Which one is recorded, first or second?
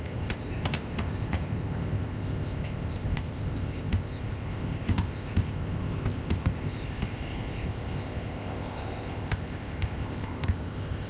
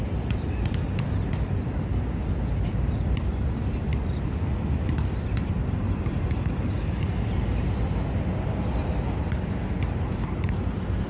second